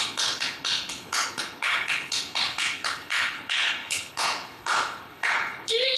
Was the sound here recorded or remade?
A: remade